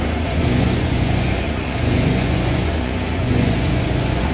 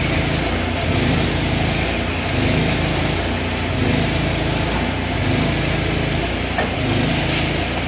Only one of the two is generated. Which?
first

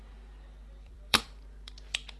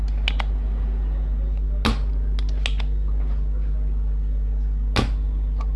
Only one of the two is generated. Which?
first